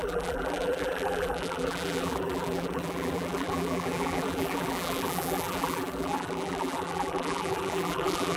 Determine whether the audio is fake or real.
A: fake